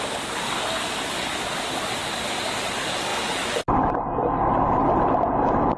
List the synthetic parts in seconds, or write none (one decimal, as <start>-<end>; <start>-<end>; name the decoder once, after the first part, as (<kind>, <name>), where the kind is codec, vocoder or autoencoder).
none